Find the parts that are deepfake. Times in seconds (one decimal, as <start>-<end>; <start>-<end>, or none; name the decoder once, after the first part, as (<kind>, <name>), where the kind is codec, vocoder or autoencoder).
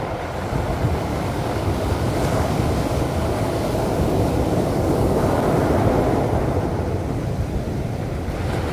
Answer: 1.1-5.4 (codec, DAC)